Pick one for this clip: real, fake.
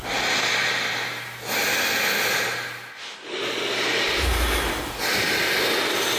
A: real